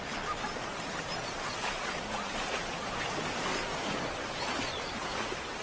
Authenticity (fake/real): real